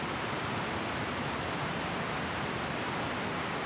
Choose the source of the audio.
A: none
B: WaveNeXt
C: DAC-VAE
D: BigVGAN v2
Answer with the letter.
A